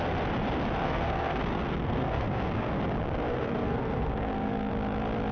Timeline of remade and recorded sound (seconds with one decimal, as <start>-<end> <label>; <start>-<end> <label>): 0.0-0.8 recorded; 0.8-2.7 remade; 2.7-3.3 recorded; 3.3-4.7 remade; 4.7-5.3 recorded